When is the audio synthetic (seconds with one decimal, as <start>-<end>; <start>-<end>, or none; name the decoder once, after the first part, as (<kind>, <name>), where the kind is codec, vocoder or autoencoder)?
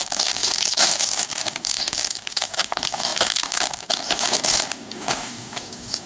0.0-6.1 (codec, DAC)